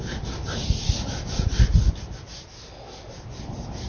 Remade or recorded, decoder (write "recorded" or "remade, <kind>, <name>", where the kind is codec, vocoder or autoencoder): recorded